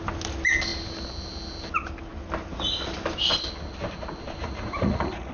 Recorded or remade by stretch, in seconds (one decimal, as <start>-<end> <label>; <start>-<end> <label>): 0.0-4.4 recorded; 4.4-5.3 remade